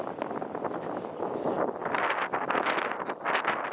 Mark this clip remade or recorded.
recorded